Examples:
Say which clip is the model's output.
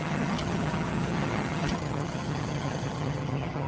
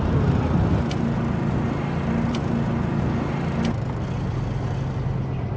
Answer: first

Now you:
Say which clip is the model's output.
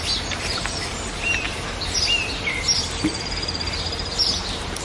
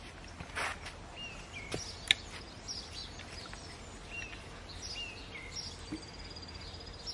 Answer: first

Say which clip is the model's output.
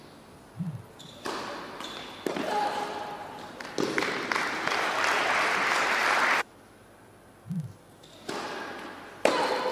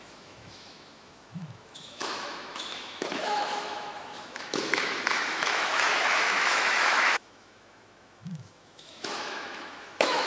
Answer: second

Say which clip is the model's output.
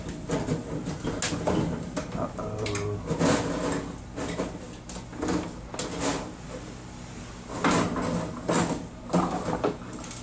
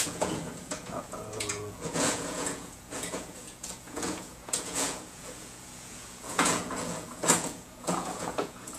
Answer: second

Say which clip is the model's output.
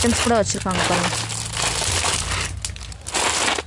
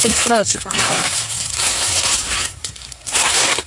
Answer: second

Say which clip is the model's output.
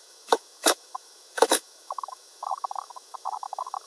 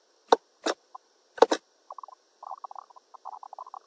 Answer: first